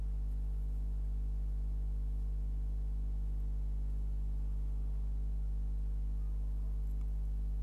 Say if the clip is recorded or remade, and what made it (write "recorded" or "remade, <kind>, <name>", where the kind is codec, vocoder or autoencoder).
recorded